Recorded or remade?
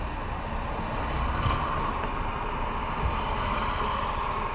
recorded